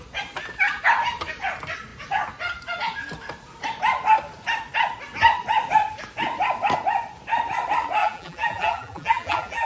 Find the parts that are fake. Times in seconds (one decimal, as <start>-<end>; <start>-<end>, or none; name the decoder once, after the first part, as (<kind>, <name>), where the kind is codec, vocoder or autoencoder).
8.0-9.7 (vocoder, BigVGAN v2)